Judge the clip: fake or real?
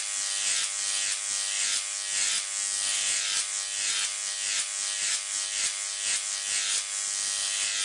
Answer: real